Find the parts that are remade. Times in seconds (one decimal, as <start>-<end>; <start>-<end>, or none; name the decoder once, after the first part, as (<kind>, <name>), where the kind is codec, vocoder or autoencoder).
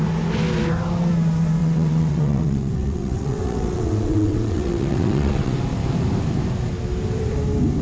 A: 1.6-5.6 (vocoder, WaveNeXt)